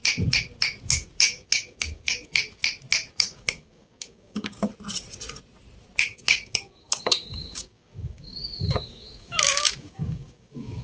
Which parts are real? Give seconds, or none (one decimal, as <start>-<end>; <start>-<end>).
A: 0.0-1.2; 2.6-3.1; 4.7-6.0